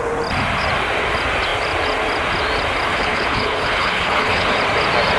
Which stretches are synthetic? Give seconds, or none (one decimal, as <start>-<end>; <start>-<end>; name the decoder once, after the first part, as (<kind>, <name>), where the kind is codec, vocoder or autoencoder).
2.9-4.6 (codec, HILCodec)